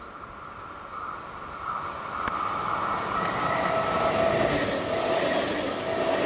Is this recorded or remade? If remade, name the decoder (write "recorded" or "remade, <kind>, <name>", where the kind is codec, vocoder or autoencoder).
recorded